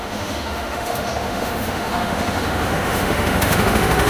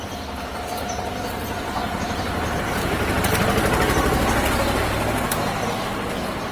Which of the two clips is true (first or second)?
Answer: second